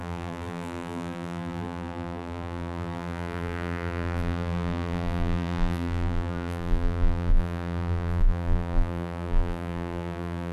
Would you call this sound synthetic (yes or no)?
yes